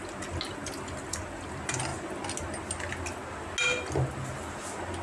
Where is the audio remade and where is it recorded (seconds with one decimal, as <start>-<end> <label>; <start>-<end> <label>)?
0.0-5.0 recorded